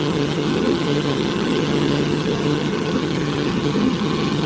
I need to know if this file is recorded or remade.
remade